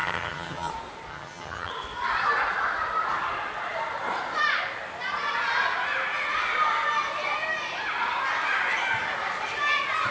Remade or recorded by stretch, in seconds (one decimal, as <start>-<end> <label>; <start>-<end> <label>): 0.0-0.7 remade; 0.7-1.1 recorded; 1.1-1.7 remade; 1.7-10.1 recorded